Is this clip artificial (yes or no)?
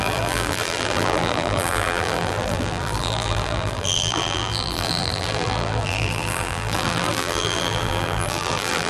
yes